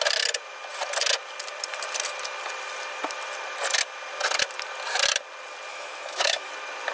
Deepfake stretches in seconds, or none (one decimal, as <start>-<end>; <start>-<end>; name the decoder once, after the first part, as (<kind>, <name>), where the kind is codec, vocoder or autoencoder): 5.7-6.5 (autoencoder, DAC-VAE)